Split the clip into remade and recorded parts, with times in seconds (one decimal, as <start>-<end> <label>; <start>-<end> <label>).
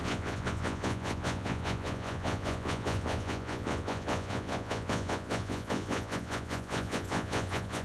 0.0-7.8 remade